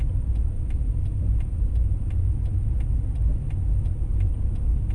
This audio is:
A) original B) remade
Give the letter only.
B